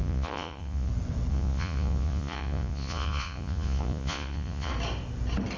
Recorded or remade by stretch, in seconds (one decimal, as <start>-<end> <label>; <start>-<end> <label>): 0.0-0.9 remade; 0.9-1.3 recorded; 1.3-4.7 remade; 4.7-5.6 recorded

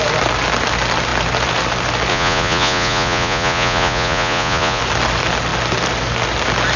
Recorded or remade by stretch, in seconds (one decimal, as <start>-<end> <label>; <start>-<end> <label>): 0.0-2.1 recorded; 2.1-4.8 remade; 4.8-6.8 recorded